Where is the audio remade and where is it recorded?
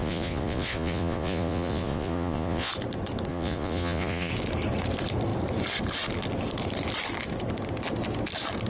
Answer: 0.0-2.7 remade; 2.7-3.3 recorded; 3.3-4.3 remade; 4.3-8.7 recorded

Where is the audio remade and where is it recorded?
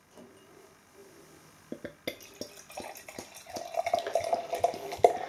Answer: 0.0-5.3 recorded